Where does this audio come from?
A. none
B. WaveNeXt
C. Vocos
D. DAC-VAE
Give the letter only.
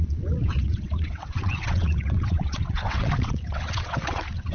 B